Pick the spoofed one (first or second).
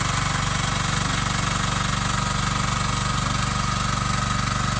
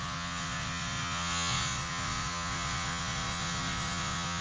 second